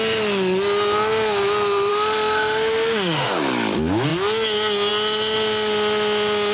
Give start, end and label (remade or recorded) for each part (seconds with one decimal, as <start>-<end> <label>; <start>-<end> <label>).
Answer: 0.0-1.9 recorded; 1.9-3.3 remade; 3.3-6.5 recorded